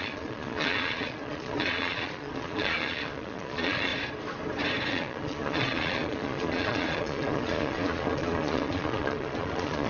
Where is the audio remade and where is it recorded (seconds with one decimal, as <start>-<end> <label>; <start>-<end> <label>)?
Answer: 0.0-3.9 remade; 3.9-4.9 recorded; 4.9-9.9 remade